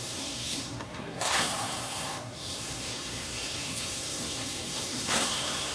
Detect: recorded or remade remade